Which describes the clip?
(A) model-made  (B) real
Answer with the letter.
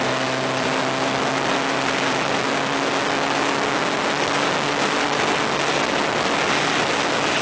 B